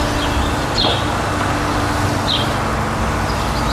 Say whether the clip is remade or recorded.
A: recorded